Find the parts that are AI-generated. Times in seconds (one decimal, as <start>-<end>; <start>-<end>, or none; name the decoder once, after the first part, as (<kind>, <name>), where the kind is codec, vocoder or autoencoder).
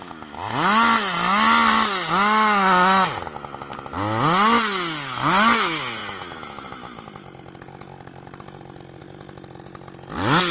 none